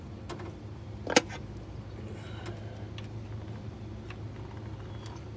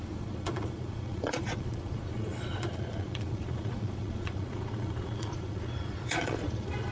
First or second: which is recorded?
first